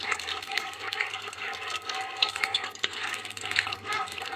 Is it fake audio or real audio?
fake